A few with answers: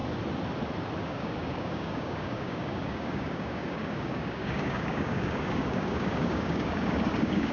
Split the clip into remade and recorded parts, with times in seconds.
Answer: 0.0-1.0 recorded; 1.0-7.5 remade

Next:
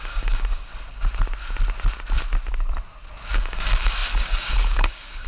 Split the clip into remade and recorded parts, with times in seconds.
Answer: 0.0-0.7 remade; 0.7-3.3 recorded; 3.3-5.3 remade